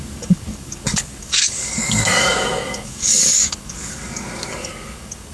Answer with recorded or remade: remade